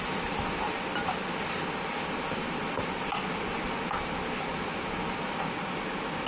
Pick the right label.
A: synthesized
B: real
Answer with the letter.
B